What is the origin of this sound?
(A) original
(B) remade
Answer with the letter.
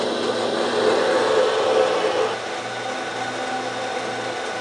A